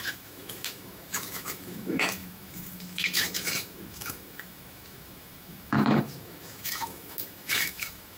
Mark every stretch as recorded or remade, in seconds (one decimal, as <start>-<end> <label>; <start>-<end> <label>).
0.0-8.2 remade